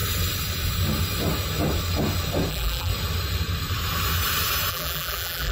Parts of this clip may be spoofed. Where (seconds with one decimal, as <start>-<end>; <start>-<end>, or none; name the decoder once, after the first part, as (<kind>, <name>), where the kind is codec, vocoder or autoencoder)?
2.5-2.9 (vocoder, BigVGAN v2); 4.7-5.5